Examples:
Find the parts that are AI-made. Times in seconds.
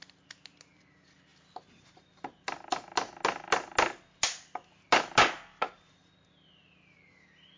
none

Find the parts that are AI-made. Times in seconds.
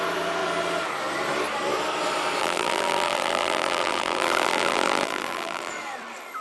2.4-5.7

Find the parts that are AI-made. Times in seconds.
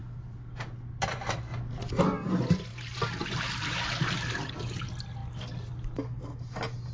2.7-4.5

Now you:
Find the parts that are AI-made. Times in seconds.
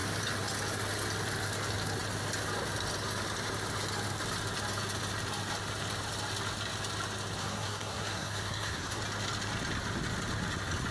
7.4-9.0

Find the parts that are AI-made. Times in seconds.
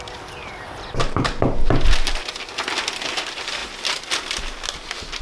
none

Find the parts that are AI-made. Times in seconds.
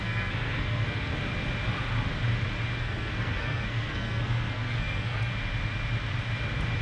0.0-1.1; 2.8-5.3